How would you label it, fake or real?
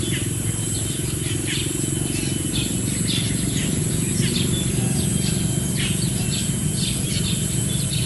real